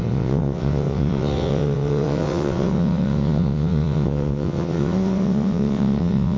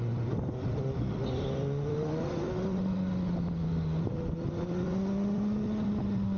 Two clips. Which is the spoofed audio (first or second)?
first